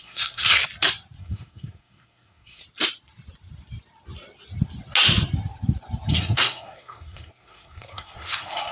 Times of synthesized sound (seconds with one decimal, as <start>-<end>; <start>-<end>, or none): 0.0-0.6; 1.2-2.6; 6.1-8.7